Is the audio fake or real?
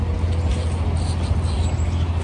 real